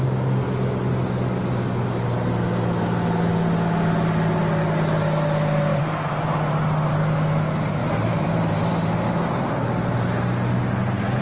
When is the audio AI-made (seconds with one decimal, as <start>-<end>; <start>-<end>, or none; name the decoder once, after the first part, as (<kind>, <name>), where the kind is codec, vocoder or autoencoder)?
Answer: 7.8-8.3 (vocoder, BigVGAN v2)